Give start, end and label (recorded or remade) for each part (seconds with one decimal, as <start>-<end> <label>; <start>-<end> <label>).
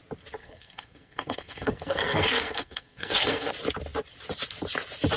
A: 0.0-0.4 recorded; 0.4-3.5 remade; 3.5-5.2 recorded